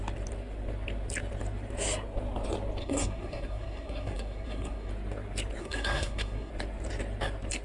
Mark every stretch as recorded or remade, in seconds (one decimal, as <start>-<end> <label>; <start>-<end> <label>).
0.0-2.8 recorded; 2.8-4.9 remade; 4.9-5.6 recorded; 5.6-6.5 remade; 6.5-7.6 recorded